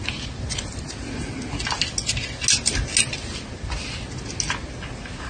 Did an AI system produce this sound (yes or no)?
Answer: no